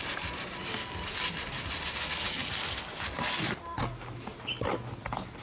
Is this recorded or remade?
recorded